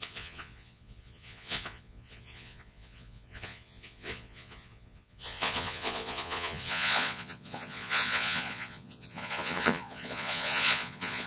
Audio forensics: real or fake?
fake